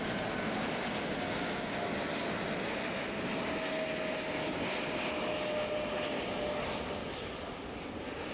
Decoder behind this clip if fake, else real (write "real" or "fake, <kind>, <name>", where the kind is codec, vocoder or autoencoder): real